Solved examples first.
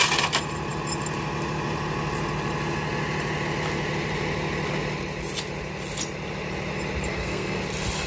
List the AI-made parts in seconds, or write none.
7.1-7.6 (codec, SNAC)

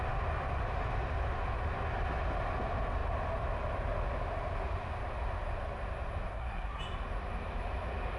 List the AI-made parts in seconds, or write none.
6.3-6.8 (codec, SNAC)